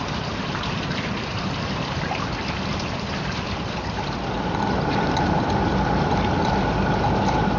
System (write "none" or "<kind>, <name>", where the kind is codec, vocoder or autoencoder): vocoder, BigVGAN v2